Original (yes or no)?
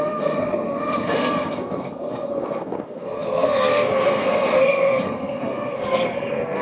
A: no